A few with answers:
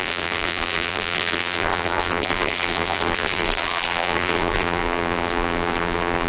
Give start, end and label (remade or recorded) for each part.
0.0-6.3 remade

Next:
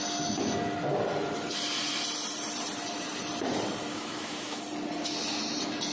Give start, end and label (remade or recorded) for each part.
0.0-3.9 recorded; 3.9-4.6 remade; 4.6-5.9 recorded

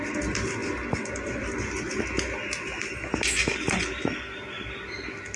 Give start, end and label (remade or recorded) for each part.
0.0-5.4 recorded